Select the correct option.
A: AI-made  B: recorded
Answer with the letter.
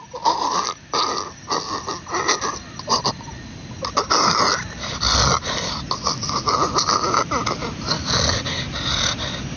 B